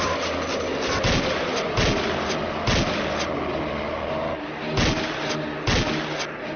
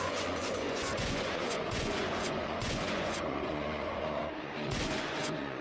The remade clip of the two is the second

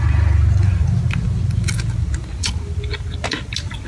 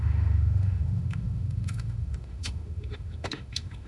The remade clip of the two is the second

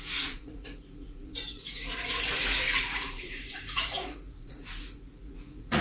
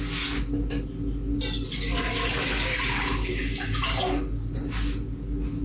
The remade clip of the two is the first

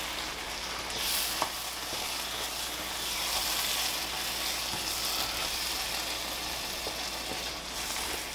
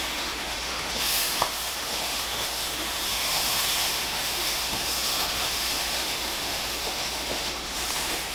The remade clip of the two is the second